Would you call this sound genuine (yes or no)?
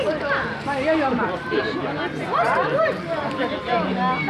yes